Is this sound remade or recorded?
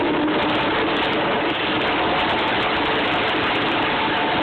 recorded